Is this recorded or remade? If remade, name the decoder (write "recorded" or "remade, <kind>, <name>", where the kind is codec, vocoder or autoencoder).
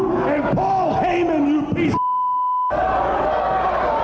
recorded